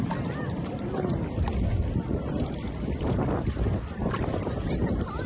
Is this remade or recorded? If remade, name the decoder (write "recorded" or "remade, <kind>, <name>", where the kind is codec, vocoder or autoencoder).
remade, vocoder, BigVGAN v2